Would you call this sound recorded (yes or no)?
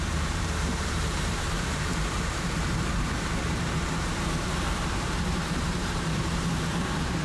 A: no